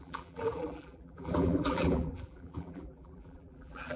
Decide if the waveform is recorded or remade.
remade